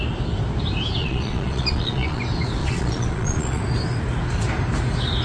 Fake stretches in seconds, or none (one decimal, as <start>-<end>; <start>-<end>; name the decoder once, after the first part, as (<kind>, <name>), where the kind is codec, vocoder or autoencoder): 1.0-2.2 (vocoder, Vocos); 2.6-3.6